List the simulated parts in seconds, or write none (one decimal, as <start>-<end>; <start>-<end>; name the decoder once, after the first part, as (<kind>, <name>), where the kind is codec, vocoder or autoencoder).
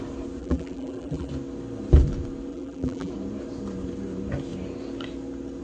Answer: 0.4-1.3 (vocoder, BigVGAN v2); 2.5-3.1